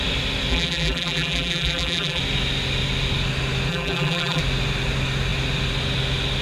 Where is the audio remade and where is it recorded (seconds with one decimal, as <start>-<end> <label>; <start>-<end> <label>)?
0.0-0.5 recorded; 0.5-2.2 remade; 2.2-3.7 recorded; 3.7-4.4 remade; 4.4-6.4 recorded